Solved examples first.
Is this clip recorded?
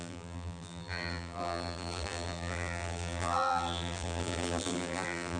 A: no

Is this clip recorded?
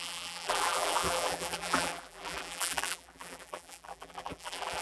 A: no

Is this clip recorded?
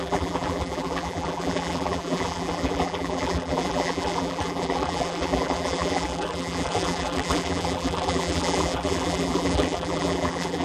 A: no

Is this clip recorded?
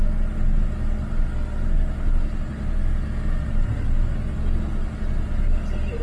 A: yes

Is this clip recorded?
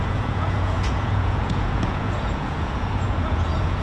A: no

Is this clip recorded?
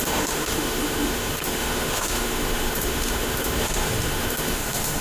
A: no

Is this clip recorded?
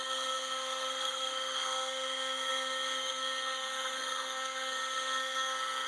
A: no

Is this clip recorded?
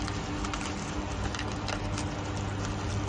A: yes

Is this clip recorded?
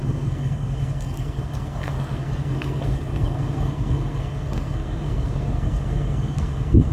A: no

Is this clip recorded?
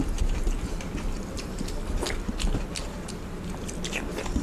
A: yes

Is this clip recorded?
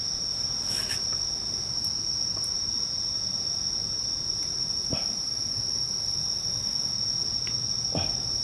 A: yes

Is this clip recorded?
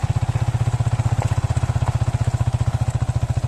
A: yes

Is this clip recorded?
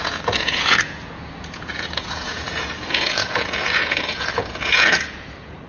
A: no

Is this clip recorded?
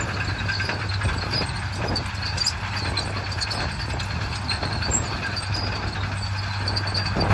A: yes